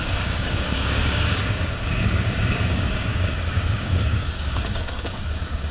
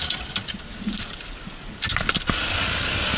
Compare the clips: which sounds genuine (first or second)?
second